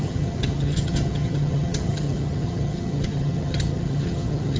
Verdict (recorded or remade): remade